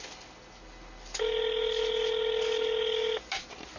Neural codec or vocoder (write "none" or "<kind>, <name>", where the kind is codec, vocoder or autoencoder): none